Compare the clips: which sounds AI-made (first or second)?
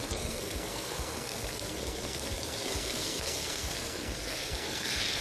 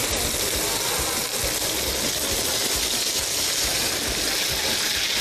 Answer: first